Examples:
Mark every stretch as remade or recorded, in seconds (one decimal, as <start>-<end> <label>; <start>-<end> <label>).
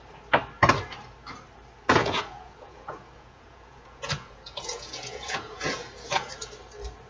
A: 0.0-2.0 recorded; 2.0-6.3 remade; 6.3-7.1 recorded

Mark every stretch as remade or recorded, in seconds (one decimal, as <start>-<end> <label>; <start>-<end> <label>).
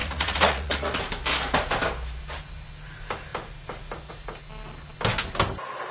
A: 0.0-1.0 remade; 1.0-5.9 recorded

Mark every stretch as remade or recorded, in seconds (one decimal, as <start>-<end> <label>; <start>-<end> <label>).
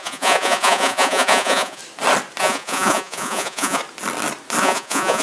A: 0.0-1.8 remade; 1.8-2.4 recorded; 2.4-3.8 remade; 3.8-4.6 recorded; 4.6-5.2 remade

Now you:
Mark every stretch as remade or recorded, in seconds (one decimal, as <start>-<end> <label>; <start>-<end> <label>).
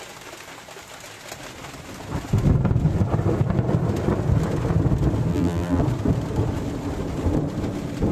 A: 0.0-5.3 recorded; 5.3-5.8 remade; 5.8-8.1 recorded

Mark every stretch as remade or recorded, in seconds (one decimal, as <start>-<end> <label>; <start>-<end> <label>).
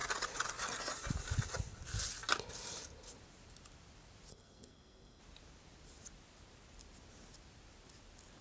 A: 0.0-4.3 recorded; 4.3-5.2 remade; 5.2-8.4 recorded